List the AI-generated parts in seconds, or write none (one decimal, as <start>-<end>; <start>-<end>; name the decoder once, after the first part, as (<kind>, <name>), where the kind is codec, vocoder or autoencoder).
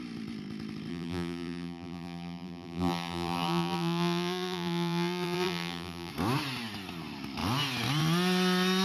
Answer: 0.9-6.1 (vocoder, BigVGAN v2)